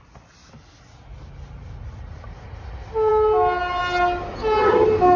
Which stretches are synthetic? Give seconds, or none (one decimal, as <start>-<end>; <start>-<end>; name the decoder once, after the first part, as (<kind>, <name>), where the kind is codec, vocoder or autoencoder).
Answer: none